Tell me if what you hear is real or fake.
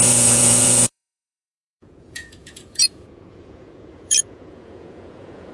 fake